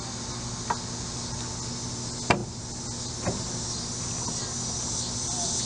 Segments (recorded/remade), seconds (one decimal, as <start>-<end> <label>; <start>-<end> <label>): 0.0-5.6 recorded